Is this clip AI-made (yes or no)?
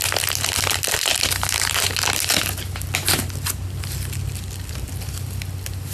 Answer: no